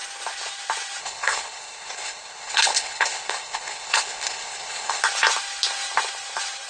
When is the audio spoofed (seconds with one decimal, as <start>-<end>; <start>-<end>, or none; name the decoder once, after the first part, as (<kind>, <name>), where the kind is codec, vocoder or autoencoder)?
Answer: 1.0-5.0 (codec, HILCodec)